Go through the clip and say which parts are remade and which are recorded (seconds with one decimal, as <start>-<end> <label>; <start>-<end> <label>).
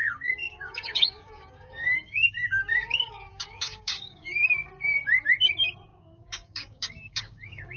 0.0-4.7 remade; 4.7-5.9 recorded; 5.9-7.8 remade